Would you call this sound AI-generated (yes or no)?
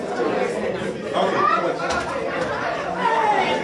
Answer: no